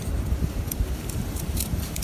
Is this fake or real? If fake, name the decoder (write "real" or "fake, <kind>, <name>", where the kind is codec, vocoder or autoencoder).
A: fake, vocoder, BigVGAN v2